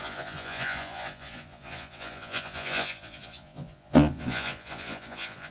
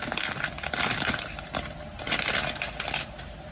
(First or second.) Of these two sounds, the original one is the second